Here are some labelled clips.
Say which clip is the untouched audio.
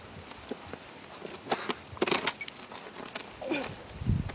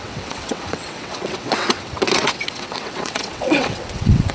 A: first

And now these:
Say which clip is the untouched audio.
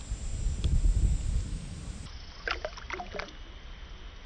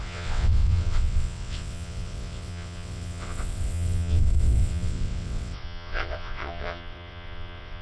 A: first